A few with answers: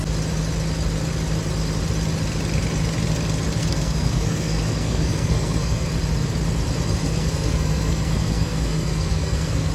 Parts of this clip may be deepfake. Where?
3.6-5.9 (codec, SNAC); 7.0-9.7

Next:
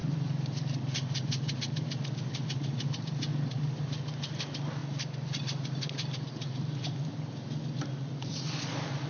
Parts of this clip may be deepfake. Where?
none

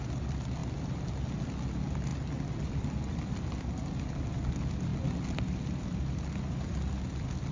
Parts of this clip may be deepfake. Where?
none

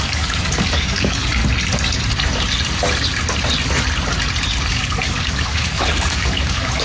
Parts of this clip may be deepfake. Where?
0.0-1.4 (codec, DAC); 4.7-6.8

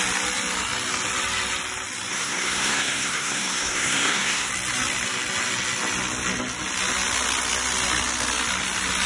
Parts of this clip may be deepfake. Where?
2.1-4.5 (codec, SNAC)